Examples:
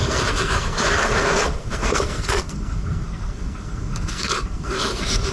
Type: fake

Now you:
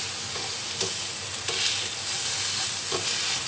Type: real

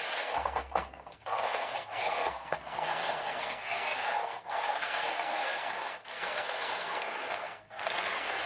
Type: fake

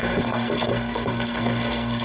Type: fake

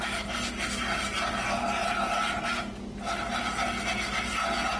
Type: real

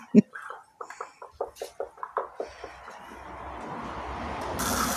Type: real